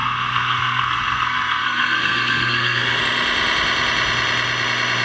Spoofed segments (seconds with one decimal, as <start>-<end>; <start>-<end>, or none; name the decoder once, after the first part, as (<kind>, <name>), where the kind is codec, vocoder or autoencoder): 0.0-3.0 (codec, SNAC)